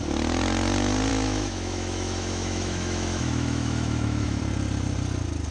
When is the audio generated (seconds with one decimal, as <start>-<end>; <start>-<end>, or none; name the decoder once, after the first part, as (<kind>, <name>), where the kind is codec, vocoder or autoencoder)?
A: 1.1-4.4 (autoencoder, DAC-VAE)